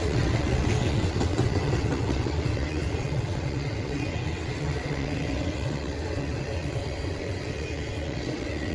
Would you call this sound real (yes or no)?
no